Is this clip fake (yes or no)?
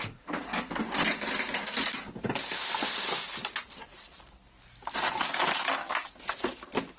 no